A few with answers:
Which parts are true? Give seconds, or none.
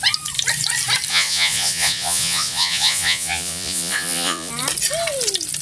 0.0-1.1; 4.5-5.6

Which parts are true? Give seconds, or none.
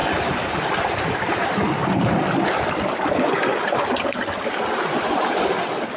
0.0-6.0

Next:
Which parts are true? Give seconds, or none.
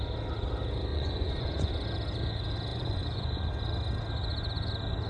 0.0-0.9; 1.7-2.7; 3.5-5.1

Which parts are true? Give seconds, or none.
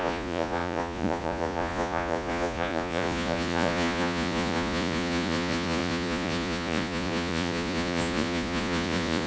none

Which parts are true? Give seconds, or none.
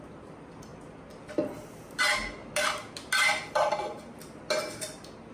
0.0-5.3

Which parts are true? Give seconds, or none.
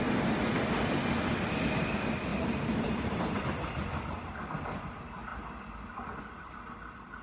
0.0-2.3; 3.4-7.2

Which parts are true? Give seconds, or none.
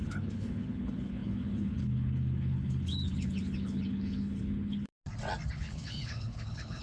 4.9-5.5